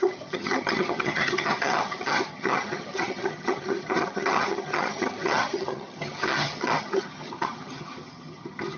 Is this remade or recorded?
remade